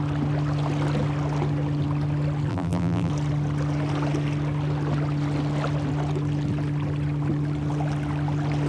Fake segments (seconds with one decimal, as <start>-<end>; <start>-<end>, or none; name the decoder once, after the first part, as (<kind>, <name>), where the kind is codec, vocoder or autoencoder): 2.5-3.1 (vocoder, BigVGAN v2)